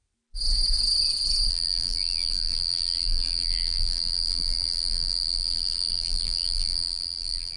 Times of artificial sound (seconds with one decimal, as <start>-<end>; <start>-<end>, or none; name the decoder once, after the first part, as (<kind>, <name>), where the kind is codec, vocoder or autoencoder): 1.5-7.6 (vocoder, BigVGAN v2)